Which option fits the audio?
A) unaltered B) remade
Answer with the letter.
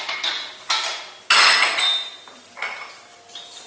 A